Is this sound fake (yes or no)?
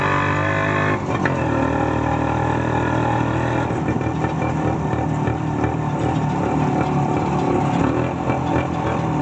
no